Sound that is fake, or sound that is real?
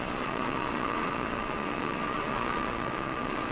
fake